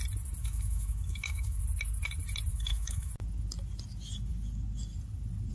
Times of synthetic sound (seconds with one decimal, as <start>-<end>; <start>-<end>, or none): 0.4-1.6; 2.5-3.1